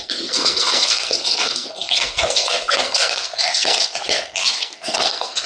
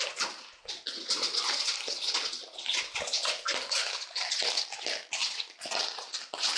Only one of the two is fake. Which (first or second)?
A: first